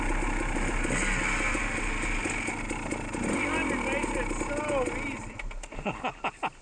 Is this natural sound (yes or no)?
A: yes